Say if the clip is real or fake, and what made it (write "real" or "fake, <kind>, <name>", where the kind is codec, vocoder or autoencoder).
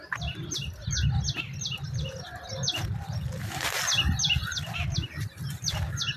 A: real